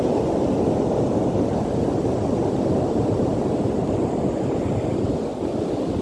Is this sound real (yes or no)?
yes